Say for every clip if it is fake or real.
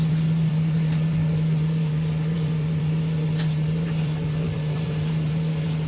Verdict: fake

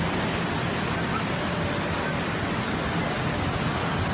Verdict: real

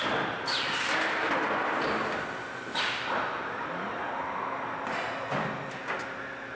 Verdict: real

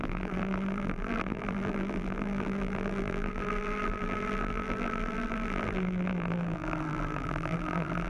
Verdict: fake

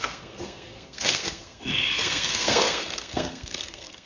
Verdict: fake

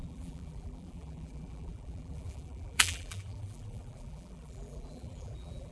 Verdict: fake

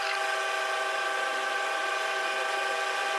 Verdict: real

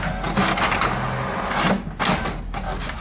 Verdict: real